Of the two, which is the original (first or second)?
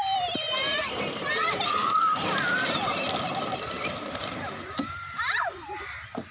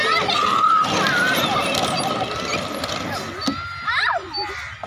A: second